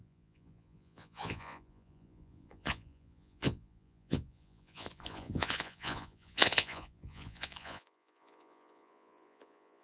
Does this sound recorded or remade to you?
remade